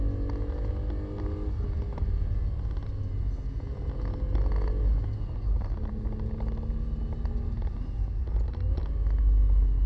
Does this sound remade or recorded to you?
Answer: recorded